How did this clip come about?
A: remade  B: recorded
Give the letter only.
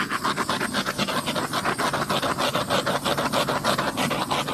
B